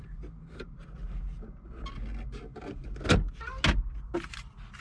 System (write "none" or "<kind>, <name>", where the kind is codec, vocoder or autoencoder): none